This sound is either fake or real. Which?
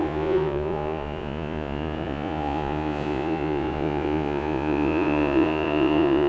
fake